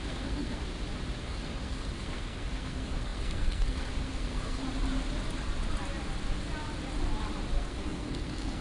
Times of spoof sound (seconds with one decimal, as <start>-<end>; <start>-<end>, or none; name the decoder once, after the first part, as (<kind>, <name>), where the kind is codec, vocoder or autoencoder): 0.0-0.6 (codec, SNAC); 1.2-4.6; 7.5-8.6